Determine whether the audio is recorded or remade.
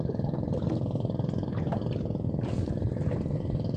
remade